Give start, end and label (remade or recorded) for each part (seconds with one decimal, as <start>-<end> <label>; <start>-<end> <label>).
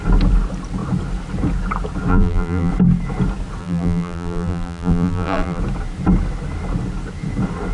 0.0-2.1 recorded; 2.1-2.7 remade; 2.7-3.6 recorded; 3.6-5.6 remade; 5.6-7.7 recorded